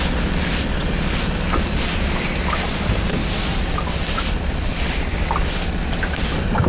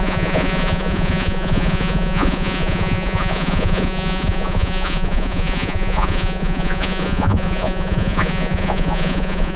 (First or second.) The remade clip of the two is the second